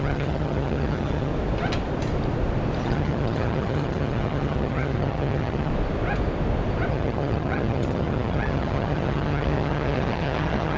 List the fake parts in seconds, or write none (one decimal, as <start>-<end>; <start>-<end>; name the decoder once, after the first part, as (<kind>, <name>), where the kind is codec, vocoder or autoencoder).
0.0-1.3 (vocoder, HiFi-GAN); 2.8-5.7; 6.9-10.8